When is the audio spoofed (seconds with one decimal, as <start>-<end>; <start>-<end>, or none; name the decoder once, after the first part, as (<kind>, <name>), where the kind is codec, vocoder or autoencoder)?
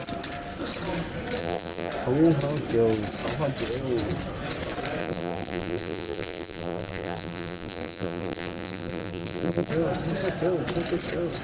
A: 1.4-1.9 (vocoder, BigVGAN v2); 5.0-9.7